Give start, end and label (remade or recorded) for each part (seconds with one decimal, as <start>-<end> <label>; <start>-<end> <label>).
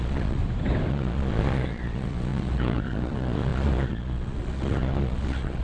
0.0-0.4 remade; 0.4-0.9 recorded; 0.9-5.6 remade